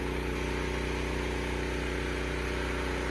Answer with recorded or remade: recorded